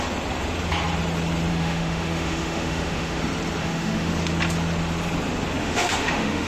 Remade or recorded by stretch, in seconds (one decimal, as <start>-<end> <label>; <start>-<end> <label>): 0.0-1.5 recorded; 1.5-3.2 remade; 3.2-3.6 recorded; 3.6-4.1 remade; 4.1-5.6 recorded; 5.6-6.5 remade